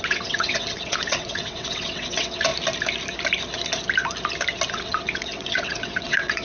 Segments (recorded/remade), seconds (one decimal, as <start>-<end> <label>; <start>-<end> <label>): 0.0-2.5 remade; 2.5-4.7 recorded; 4.7-6.4 remade